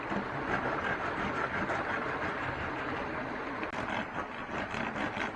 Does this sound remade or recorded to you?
recorded